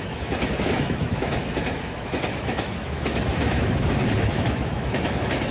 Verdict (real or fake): fake